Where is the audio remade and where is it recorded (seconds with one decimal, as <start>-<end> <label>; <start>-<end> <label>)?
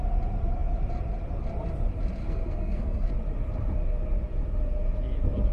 0.0-2.2 recorded; 2.2-3.1 remade; 3.1-5.5 recorded